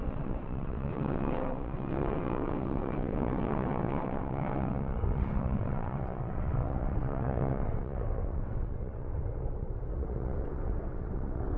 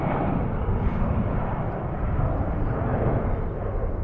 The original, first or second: second